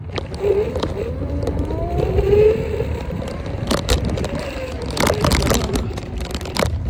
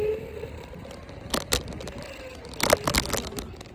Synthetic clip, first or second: first